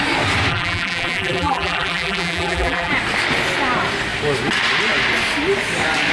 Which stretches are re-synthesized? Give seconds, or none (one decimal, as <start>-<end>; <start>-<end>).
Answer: 0.5-2.9